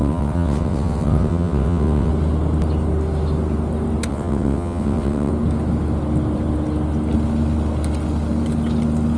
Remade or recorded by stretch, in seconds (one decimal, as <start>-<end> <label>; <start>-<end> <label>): 0.0-2.1 remade; 2.1-4.1 recorded; 4.1-5.3 remade; 5.3-9.2 recorded